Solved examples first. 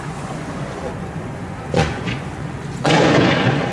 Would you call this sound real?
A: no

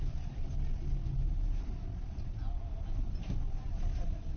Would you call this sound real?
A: yes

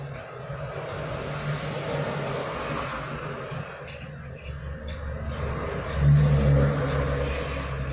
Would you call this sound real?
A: yes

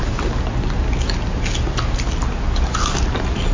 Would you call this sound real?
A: yes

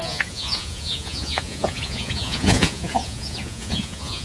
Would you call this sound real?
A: no